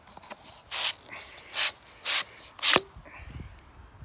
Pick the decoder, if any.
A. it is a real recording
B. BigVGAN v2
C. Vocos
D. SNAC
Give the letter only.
A